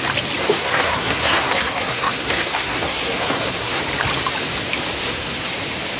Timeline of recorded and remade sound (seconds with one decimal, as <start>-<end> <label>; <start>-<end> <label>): 0.0-0.4 recorded; 0.4-3.8 remade; 3.8-5.0 recorded; 5.0-5.5 remade; 5.5-6.0 recorded